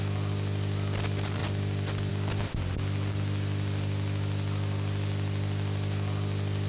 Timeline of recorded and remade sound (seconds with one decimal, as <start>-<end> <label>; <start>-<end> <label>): 0.0-6.7 recorded